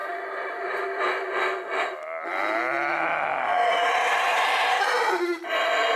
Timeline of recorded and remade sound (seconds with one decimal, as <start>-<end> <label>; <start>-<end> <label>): 0.0-1.3 remade; 1.3-3.5 recorded; 3.5-5.1 remade; 5.1-6.0 recorded